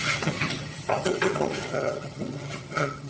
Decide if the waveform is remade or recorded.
remade